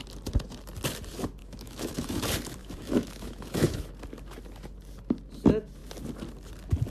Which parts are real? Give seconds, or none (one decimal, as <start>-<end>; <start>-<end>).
0.0-1.4; 2.2-2.6; 3.9-6.9